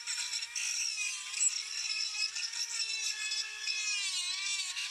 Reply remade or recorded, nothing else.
recorded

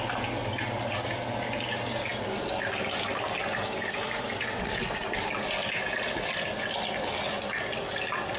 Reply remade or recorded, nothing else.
recorded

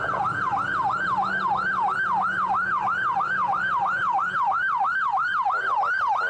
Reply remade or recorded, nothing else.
recorded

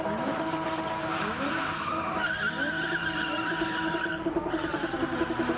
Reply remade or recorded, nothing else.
remade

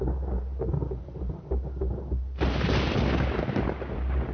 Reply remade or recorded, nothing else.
recorded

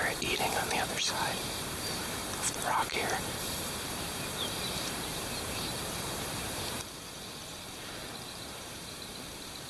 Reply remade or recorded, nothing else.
remade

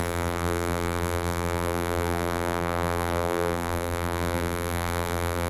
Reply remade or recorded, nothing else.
remade